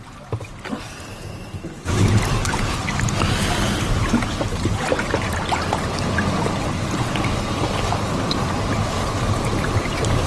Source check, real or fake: real